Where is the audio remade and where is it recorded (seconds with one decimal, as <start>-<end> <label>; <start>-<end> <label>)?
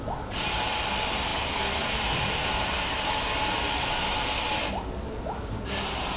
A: 0.0-6.2 recorded